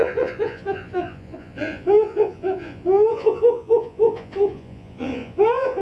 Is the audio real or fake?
fake